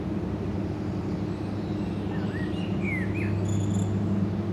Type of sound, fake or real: real